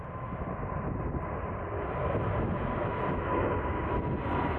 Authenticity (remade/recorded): recorded